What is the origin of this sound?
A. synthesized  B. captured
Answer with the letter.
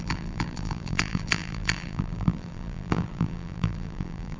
A